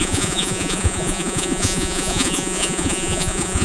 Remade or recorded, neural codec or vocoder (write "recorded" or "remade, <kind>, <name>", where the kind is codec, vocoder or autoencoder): remade, vocoder, Vocos